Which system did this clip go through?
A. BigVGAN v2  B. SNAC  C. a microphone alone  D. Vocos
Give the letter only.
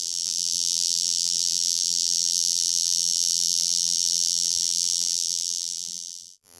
A